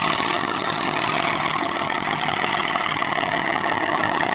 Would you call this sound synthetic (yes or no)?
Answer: yes